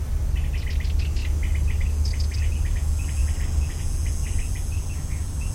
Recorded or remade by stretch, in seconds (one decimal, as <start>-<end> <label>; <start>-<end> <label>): 0.0-5.5 recorded